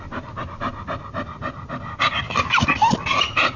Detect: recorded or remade recorded